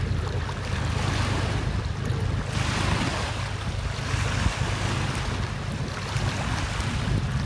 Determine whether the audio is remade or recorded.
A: recorded